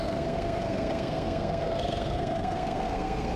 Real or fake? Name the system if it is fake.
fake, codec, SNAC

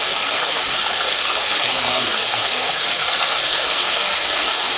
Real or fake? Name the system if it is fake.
fake, codec, SNAC